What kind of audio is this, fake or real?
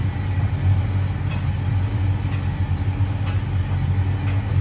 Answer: real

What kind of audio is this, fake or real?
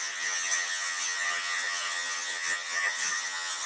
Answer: fake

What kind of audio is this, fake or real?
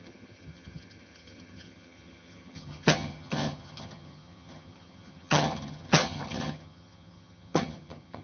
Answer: fake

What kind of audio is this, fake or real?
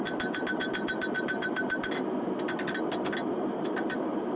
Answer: real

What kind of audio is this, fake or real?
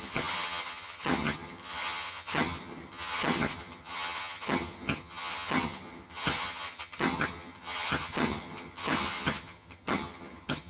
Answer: fake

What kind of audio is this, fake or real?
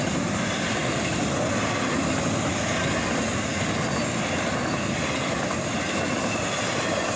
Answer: real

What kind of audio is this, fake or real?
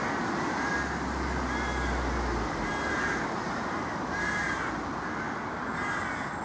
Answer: real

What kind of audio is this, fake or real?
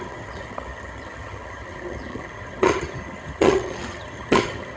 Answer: fake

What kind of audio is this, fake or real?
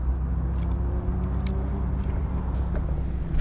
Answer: real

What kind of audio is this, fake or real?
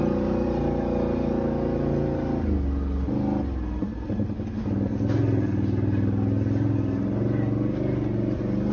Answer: real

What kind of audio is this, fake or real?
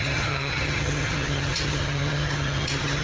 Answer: fake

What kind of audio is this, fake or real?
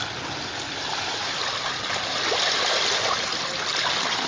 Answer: real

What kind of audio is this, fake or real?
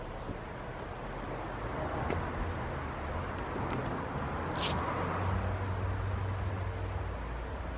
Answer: real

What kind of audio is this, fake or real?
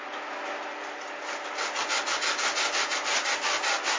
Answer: real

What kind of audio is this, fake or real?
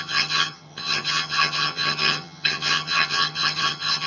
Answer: fake